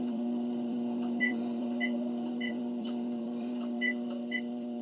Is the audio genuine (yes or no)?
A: no